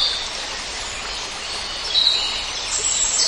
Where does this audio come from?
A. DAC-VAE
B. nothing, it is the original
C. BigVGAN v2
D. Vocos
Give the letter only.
B